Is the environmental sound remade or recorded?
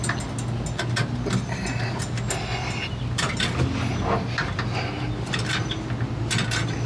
recorded